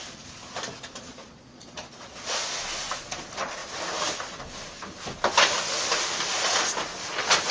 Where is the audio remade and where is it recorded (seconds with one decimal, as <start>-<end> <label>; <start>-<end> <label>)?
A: 0.0-0.9 recorded; 0.9-2.5 remade; 2.5-7.5 recorded